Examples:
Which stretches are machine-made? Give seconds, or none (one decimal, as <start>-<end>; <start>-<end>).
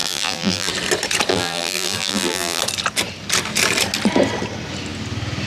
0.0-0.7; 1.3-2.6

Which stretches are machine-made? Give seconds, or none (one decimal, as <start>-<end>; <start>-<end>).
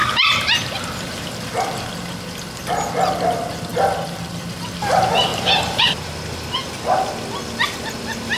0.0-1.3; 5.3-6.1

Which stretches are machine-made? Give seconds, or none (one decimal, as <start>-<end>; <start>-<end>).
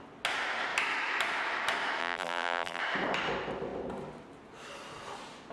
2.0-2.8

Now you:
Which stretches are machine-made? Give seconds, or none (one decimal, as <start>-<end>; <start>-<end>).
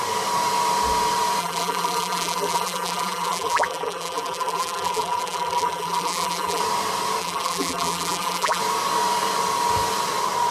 1.4-6.6; 7.2-8.6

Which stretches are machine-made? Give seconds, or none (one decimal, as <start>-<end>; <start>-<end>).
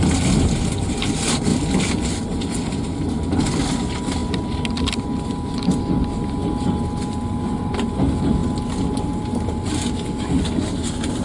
1.5-3.6; 4.2-5.8